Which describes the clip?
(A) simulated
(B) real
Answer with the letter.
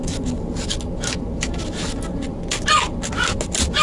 B